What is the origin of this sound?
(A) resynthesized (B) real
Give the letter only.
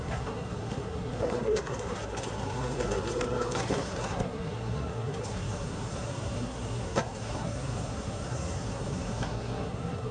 A